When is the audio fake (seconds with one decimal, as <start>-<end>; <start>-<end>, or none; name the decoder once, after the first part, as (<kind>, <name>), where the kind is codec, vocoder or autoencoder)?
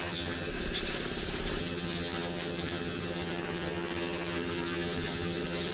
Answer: 0.0-0.5 (vocoder, HiFi-GAN); 1.6-5.7